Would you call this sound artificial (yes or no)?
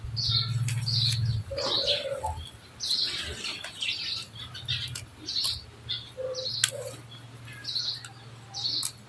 no